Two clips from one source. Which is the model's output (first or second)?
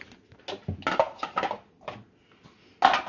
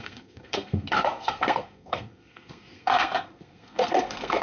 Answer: second